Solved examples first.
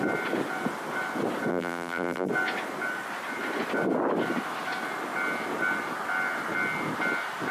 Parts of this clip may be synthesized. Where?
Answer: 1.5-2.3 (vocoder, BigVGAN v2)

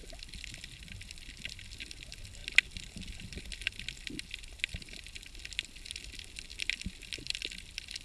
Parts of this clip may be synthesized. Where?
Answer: none

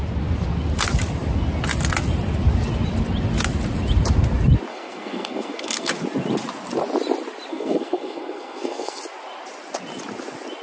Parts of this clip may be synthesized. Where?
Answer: 4.7-5.9 (codec, SNAC); 7.5-9.0

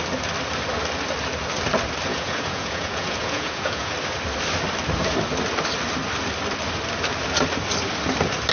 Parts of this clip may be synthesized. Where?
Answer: 2.1-3.9 (vocoder, Vocos)

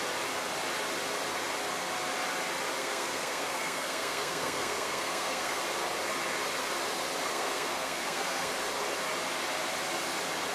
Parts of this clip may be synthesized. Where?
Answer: 2.8-5.6 (codec, SNAC); 7.3-8.5

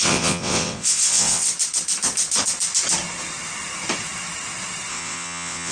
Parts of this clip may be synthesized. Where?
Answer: 0.0-1.5 (vocoder, WaveNeXt); 4.9-5.7